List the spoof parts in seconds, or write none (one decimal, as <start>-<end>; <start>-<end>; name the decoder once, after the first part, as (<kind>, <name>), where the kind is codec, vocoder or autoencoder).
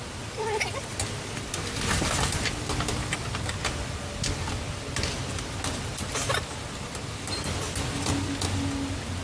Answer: none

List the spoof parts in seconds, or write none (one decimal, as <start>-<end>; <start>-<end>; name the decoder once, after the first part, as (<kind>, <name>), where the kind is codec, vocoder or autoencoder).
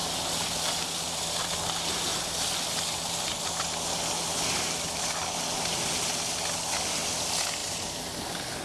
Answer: 0.0-1.6 (vocoder, BigVGAN v2)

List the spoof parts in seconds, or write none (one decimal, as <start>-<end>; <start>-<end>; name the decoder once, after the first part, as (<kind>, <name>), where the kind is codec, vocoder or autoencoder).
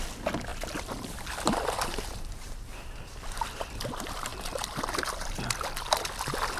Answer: none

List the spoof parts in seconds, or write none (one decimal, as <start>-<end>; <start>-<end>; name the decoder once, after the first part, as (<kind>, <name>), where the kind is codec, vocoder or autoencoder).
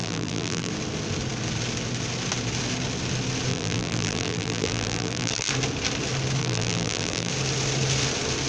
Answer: 0.0-0.7 (vocoder, BigVGAN v2); 3.5-5.5; 6.4-7.3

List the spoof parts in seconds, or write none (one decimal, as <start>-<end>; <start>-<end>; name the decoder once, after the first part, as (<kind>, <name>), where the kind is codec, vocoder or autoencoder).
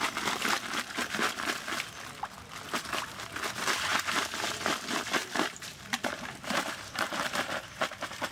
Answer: 5.2-8.3 (vocoder, BigVGAN v2)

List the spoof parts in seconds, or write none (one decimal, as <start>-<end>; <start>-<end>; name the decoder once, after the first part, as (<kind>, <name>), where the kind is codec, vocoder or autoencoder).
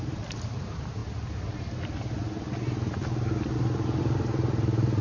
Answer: 0.0-1.0 (vocoder, BigVGAN v2); 4.0-5.0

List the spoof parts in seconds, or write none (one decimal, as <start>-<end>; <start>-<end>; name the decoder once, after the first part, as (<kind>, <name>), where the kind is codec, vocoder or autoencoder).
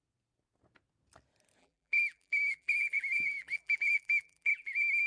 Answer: 1.6-5.1 (vocoder, BigVGAN v2)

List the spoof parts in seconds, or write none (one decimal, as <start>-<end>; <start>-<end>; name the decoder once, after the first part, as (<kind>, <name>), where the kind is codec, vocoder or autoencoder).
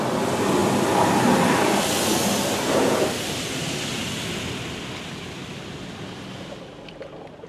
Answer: none